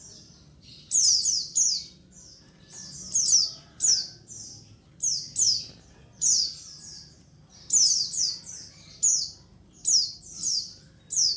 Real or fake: real